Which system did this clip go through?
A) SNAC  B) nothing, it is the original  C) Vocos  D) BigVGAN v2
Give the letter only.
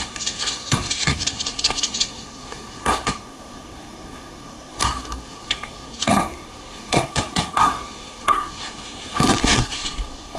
A